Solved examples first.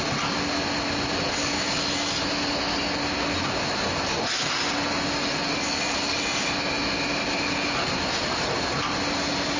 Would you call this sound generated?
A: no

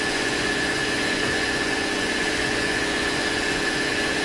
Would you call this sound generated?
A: yes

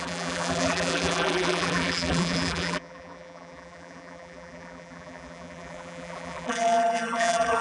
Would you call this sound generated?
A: yes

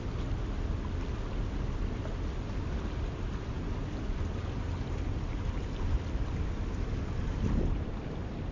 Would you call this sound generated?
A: no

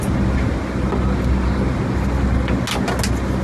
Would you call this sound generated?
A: no